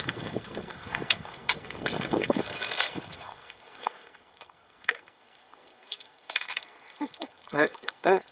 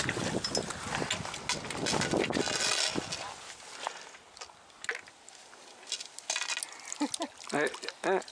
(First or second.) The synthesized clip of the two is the first